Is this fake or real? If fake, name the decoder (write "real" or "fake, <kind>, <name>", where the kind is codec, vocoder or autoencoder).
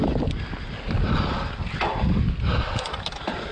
real